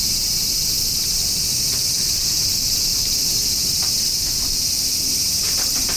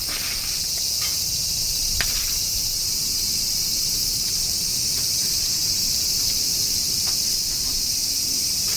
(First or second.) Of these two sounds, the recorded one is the first